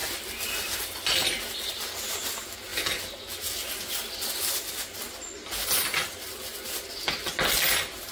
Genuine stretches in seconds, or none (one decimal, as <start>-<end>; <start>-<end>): 0.0-8.1